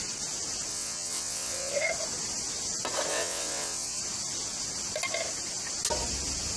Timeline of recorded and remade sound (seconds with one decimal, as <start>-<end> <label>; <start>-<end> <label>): 0.0-0.7 recorded; 0.7-1.7 remade; 1.7-3.1 recorded; 3.1-4.0 remade; 4.0-6.6 recorded